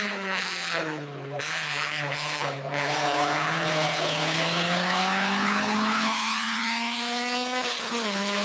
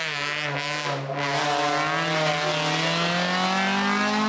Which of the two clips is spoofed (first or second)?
first